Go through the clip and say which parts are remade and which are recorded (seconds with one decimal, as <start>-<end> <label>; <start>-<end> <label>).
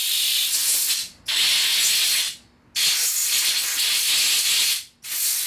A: 0.0-3.2 recorded; 3.2-4.1 remade; 4.1-5.5 recorded